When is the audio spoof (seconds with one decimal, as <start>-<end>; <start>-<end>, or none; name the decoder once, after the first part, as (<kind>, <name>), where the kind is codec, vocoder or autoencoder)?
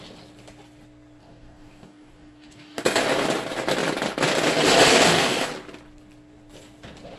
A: 1.2-3.0 (codec, DAC); 4.9-5.5